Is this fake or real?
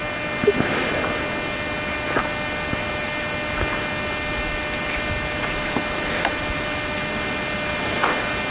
real